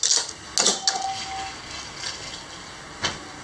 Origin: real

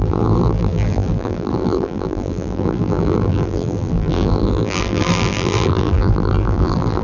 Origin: fake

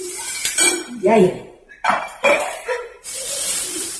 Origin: fake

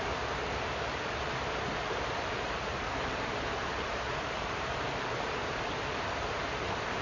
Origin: fake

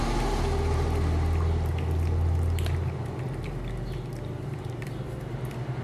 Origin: real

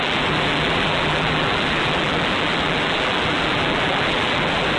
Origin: fake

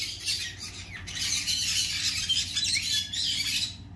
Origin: real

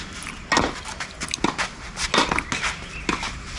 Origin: real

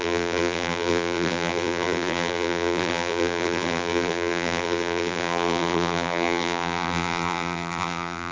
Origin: fake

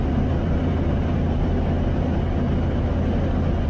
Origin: real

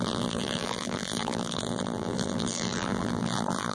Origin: fake